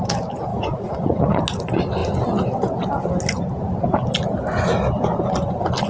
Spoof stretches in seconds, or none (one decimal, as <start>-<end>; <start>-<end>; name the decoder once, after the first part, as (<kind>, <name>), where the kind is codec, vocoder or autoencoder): 0.5-1.4 (vocoder, Vocos)